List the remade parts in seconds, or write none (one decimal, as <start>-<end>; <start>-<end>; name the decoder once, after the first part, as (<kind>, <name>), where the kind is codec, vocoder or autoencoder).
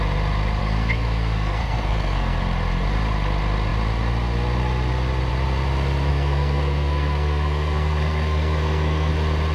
0.6-2.4 (codec, SNAC); 6.1-9.1